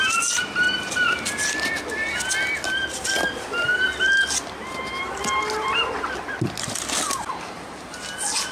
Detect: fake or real real